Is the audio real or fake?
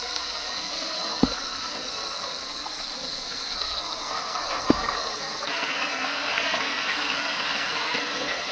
fake